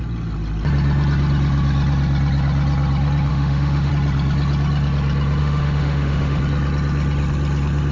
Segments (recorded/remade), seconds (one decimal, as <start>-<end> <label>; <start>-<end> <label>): 0.0-3.3 recorded; 3.3-3.9 remade; 3.9-5.4 recorded; 5.4-6.4 remade; 6.4-7.9 recorded